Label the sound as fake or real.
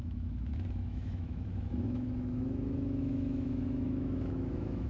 fake